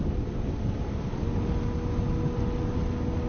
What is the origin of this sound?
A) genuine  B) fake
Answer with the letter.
A